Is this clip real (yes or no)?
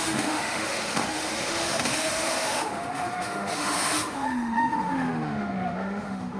no